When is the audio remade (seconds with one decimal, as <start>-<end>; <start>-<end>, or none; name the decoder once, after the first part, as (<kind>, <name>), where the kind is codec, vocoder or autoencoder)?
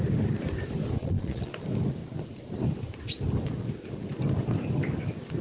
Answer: 1.0-1.5 (vocoder, Vocos)